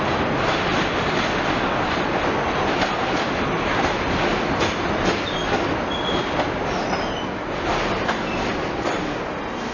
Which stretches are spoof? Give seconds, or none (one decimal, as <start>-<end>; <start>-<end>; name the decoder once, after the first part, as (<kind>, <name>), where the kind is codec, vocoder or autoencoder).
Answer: none